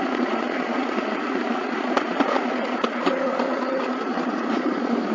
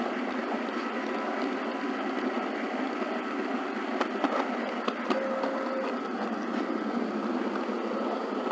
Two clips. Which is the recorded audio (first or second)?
second